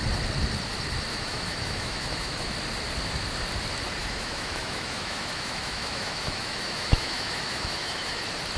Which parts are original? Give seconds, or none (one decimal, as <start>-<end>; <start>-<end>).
0.0-1.1; 2.5-4.0; 8.2-8.6